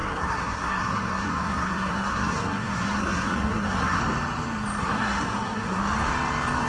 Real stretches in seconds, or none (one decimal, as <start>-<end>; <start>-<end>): 4.0-4.8; 5.8-6.7